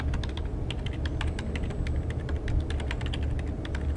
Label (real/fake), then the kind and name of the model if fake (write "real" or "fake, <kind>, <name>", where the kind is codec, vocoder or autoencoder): real